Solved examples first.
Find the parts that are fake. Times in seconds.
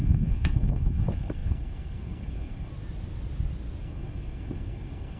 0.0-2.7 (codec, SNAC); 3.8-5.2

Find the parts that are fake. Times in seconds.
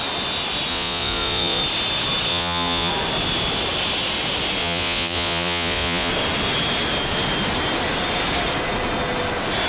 0.7-1.6 (vocoder, Vocos); 2.3-2.9; 4.6-6.1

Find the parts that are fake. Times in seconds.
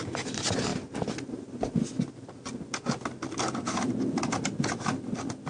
none